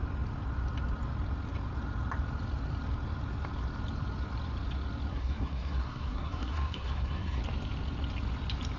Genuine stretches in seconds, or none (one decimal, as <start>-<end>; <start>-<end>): 0.0-5.1; 7.4-8.8